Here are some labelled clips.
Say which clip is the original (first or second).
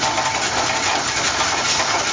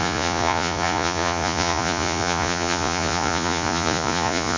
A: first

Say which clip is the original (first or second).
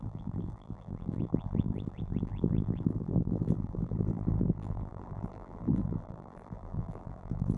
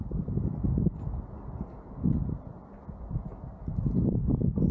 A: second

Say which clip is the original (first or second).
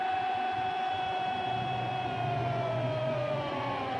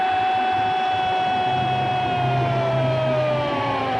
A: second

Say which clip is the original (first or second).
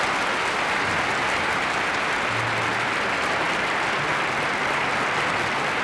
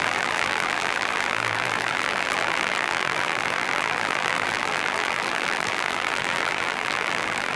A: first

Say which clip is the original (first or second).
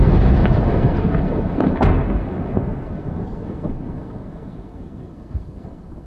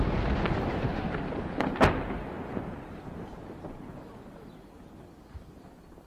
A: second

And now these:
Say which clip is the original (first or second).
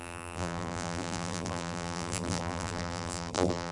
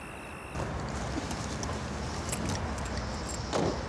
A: second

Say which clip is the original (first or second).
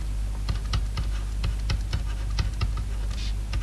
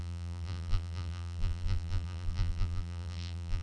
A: first